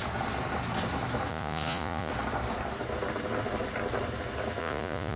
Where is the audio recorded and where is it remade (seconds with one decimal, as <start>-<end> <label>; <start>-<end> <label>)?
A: 0.0-1.3 recorded; 1.3-2.1 remade; 2.1-4.6 recorded; 4.6-5.2 remade